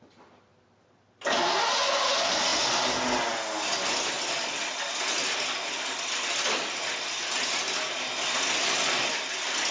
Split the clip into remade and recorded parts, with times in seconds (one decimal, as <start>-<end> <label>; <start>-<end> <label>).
0.0-9.7 recorded